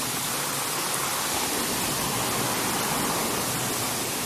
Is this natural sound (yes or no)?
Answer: yes